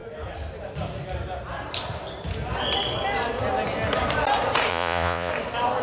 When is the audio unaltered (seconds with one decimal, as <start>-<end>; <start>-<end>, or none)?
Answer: 0.0-4.7; 5.3-5.8